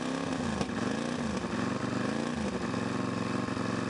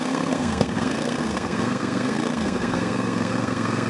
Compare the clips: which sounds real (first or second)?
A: first